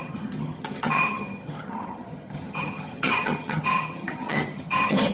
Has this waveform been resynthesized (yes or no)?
yes